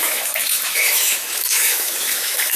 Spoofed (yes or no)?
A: yes